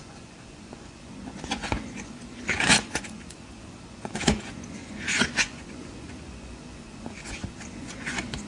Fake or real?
fake